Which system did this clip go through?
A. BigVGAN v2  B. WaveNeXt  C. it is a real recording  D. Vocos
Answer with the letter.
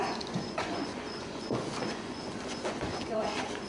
D